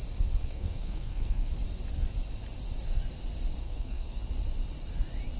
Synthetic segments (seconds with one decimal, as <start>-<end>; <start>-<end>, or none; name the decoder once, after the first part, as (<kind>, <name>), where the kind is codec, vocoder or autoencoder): 0.4-1.5 (codec, SNAC); 3.6-4.2